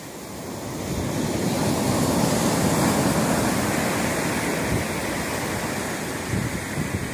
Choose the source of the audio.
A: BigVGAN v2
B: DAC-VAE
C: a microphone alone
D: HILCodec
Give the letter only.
C